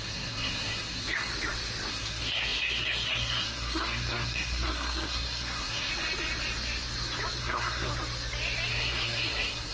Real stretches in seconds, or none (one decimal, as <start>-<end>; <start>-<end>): 1.3-1.9; 5.9-7.4; 7.9-8.7

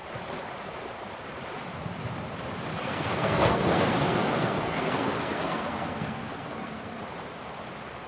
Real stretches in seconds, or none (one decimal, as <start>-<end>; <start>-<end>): 0.0-2.7; 7.0-8.1

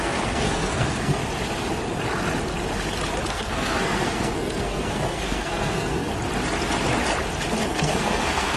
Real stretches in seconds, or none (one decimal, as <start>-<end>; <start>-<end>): 1.2-3.3; 6.1-7.6